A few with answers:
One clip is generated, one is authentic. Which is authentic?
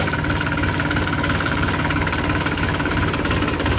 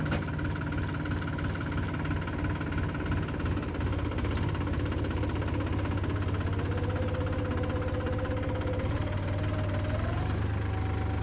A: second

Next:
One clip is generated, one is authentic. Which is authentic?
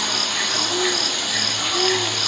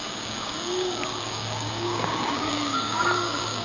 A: first